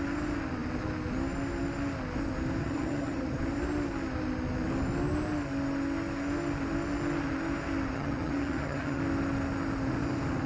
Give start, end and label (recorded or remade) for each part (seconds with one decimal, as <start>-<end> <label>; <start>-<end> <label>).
0.0-2.6 recorded; 2.6-3.4 remade; 3.4-7.9 recorded; 7.9-9.0 remade; 9.0-10.5 recorded